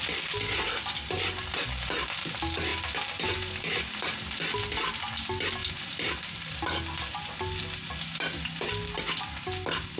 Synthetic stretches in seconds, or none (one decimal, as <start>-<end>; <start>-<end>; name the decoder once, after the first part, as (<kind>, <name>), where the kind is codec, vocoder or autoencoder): none